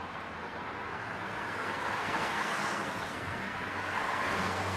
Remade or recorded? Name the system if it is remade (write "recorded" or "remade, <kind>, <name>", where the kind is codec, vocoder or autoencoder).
remade, codec, SNAC